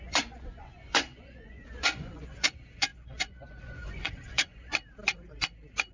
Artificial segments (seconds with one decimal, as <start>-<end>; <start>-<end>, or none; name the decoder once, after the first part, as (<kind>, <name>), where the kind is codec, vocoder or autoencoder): 0.0-4.7 (vocoder, Vocos)